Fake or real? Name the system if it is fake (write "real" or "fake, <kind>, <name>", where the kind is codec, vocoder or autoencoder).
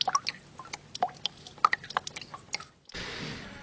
real